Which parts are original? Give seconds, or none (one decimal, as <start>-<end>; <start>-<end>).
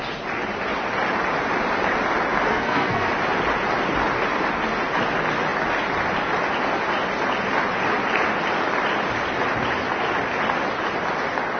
0.0-2.5; 3.1-11.6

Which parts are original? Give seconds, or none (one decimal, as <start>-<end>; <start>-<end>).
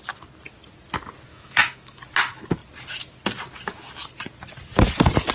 0.0-1.3; 2.0-5.3